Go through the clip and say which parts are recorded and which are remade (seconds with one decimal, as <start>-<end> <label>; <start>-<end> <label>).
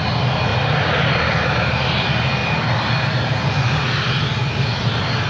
0.0-0.5 recorded; 0.5-1.9 remade; 1.9-5.3 recorded